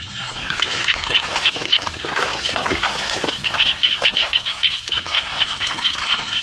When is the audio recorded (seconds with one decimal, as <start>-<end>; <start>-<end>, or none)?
none

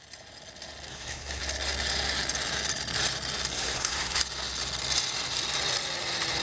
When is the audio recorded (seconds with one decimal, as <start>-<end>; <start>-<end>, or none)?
0.0-0.9; 1.4-3.5; 4.2-6.4

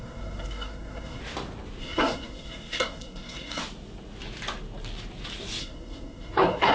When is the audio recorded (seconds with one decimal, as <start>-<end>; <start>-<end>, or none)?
1.2-1.8; 3.6-5.6

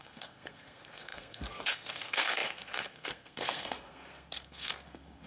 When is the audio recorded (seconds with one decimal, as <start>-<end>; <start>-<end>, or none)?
none

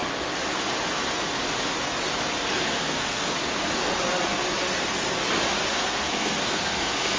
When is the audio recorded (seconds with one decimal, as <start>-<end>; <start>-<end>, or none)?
0.0-2.6; 3.9-5.7